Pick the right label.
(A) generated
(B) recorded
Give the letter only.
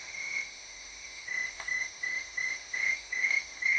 A